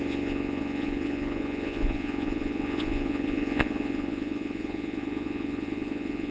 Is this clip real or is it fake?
fake